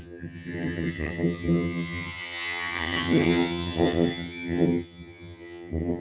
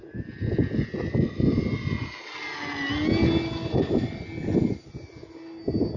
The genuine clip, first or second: second